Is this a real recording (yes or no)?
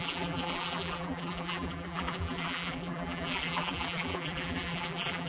no